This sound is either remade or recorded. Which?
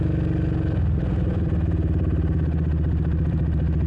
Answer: recorded